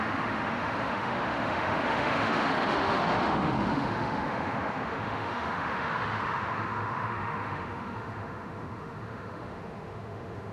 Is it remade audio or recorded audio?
remade